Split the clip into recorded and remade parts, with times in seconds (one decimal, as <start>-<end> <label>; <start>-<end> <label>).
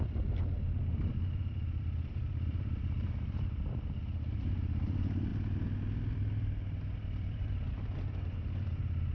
0.0-5.3 remade; 5.3-6.1 recorded; 6.1-9.1 remade